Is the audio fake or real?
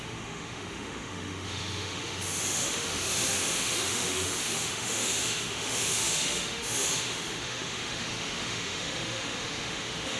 fake